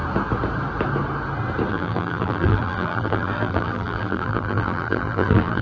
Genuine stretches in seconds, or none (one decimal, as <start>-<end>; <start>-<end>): 0.0-1.7